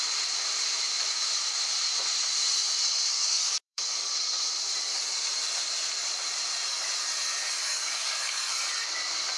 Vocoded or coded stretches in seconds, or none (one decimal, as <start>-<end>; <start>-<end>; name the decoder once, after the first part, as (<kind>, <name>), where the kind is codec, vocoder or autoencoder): 3.1-4.1 (codec, DAC); 7.6-8.5